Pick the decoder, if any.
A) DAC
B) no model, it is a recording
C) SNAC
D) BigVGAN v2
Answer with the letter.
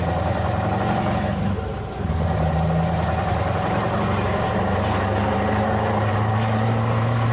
D